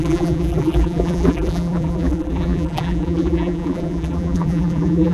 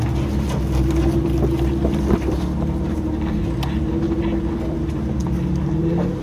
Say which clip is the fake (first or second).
first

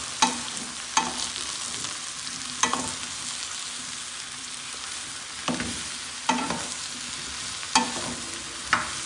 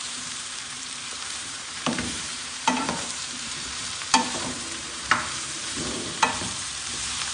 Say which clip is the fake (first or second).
second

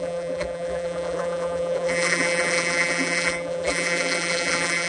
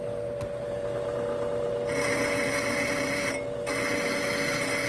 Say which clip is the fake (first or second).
first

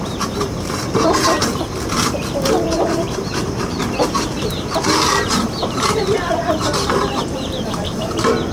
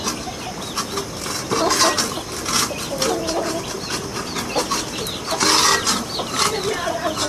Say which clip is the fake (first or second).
first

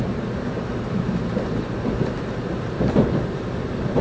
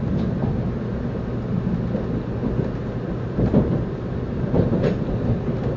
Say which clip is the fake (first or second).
first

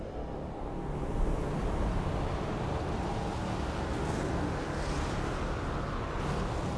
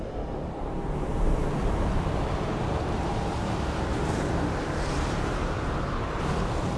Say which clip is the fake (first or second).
second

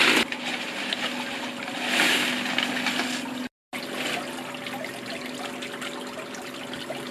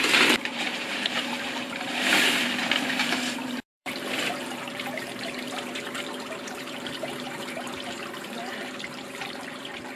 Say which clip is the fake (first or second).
second